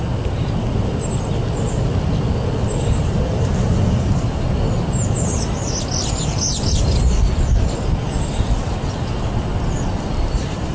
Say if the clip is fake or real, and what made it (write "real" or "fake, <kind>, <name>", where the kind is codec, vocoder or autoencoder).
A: real